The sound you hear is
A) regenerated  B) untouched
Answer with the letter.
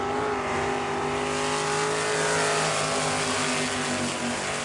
B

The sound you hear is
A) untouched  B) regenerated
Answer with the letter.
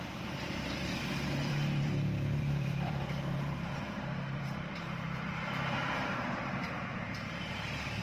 B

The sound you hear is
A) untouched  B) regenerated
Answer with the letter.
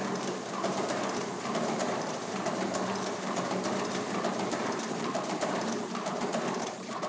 B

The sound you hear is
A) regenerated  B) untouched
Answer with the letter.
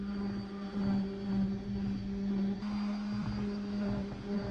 B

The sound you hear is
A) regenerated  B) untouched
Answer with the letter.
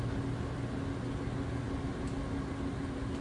B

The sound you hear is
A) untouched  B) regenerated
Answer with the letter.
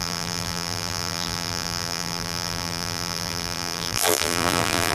B